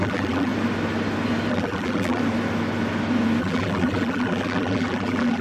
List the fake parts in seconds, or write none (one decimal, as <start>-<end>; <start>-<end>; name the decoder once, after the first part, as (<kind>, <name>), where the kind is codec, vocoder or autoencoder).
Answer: 0.0-0.5 (vocoder, BigVGAN v2); 1.5-2.2; 3.4-5.4

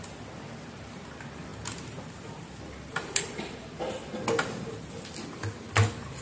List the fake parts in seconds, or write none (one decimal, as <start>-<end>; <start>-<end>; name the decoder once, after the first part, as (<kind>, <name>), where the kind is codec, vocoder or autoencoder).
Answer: none

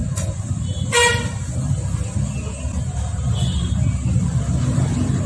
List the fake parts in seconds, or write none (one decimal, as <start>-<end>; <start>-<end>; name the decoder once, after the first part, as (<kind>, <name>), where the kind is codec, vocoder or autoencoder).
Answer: 0.0-0.6 (vocoder, BigVGAN v2)

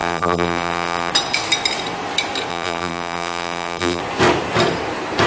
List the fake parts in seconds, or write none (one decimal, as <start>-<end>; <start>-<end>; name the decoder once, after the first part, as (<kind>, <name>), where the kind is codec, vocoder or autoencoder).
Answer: 0.0-1.1 (vocoder, BigVGAN v2); 2.5-4.0

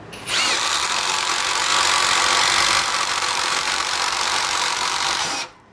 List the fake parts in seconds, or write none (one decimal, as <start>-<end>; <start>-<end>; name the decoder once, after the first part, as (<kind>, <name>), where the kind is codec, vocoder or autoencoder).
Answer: 0.0-1.7 (vocoder, BigVGAN v2); 2.8-5.7